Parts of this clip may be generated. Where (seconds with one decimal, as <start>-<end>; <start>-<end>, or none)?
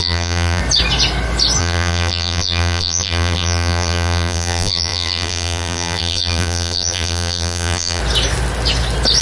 0.0-0.6; 1.6-8.0